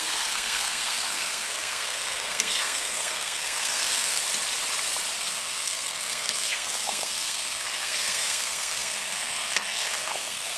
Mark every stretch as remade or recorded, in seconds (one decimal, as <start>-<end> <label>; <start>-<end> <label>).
0.0-4.2 remade; 4.2-5.2 recorded; 5.2-10.6 remade